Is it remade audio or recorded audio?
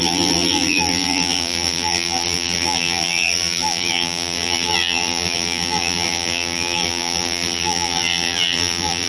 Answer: remade